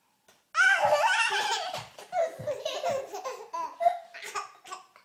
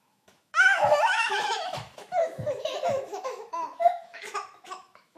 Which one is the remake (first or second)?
second